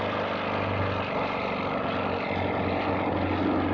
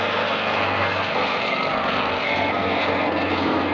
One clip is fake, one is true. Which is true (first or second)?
first